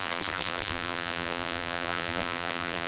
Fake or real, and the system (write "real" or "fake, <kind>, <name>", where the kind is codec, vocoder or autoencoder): fake, vocoder, BigVGAN v2